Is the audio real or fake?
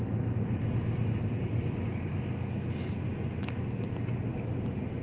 real